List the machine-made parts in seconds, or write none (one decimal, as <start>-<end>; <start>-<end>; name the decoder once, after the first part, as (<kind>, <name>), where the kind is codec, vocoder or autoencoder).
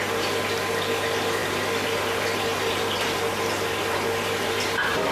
none